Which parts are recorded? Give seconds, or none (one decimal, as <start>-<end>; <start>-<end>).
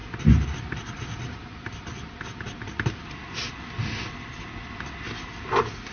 0.0-5.9